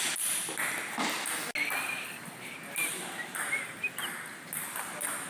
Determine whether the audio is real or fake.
real